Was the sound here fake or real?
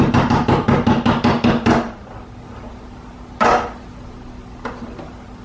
real